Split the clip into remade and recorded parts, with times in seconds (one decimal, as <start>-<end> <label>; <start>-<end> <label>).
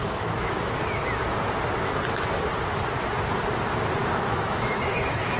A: 0.0-0.8 remade; 0.8-4.0 recorded; 4.0-5.4 remade